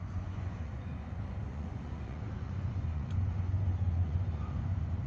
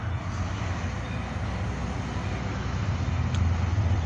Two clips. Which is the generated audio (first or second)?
first